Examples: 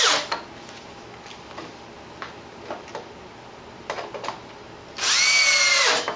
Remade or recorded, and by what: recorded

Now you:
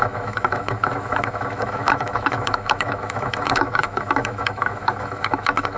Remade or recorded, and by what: remade, autoencoder, DAC-VAE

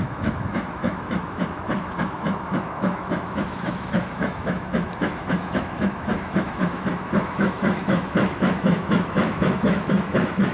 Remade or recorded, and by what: remade, autoencoder, DAC-VAE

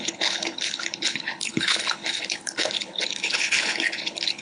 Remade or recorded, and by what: remade, codec, HILCodec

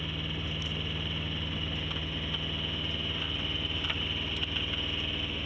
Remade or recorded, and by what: recorded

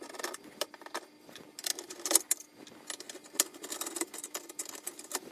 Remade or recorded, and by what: recorded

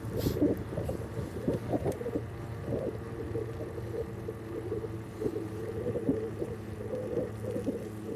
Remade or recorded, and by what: recorded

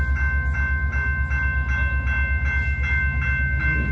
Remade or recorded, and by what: recorded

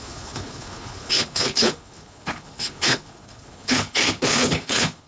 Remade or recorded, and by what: remade, codec, HILCodec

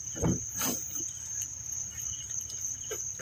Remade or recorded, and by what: remade, vocoder, BigVGAN v2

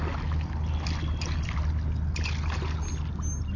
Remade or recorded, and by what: recorded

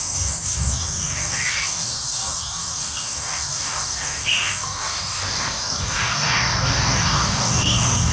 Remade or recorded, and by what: remade, codec, DAC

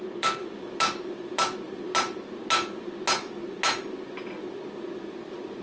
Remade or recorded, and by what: recorded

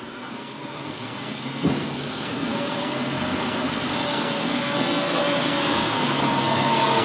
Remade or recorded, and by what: remade, codec, SNAC